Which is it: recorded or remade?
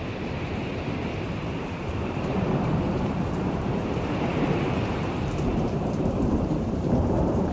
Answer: remade